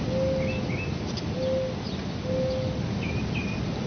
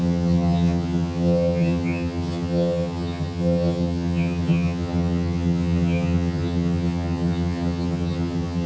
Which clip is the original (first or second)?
first